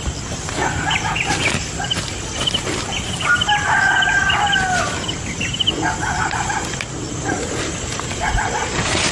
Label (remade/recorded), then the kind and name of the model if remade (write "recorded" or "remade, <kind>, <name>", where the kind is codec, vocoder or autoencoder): recorded